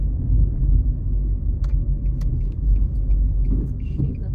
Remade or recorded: remade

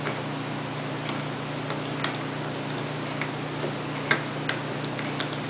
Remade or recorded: recorded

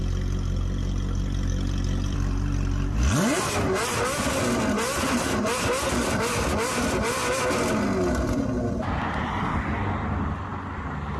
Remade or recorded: recorded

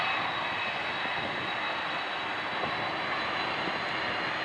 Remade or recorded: recorded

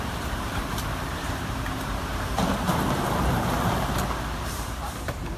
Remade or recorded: remade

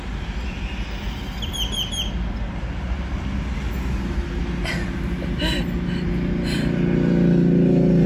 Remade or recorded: recorded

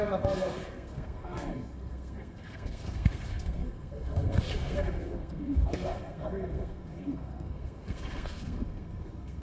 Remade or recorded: remade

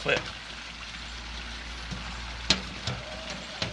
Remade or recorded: recorded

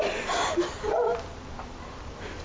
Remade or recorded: remade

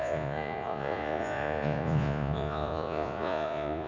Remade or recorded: remade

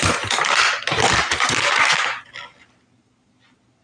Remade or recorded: recorded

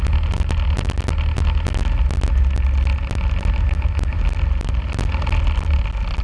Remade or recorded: recorded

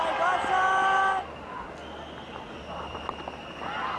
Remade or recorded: recorded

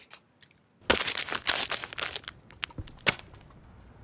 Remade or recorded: recorded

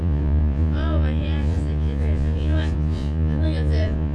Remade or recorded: remade